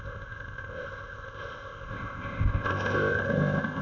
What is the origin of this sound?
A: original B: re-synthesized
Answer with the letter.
B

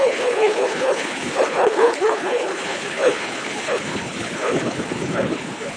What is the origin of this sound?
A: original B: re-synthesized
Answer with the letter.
B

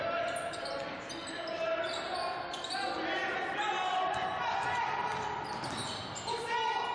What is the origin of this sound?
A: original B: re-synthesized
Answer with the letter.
A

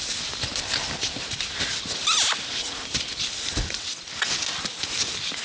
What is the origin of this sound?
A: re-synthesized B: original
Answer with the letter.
B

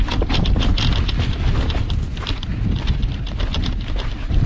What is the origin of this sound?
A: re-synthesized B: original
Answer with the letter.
B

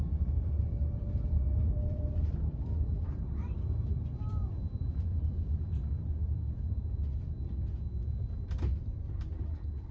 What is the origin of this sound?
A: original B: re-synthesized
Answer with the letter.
B